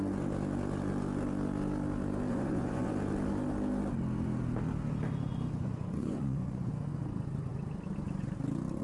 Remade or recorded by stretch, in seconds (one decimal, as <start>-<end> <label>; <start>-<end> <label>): 0.0-2.3 recorded; 2.3-2.9 remade; 2.9-5.6 recorded; 5.6-6.7 remade; 6.7-8.8 recorded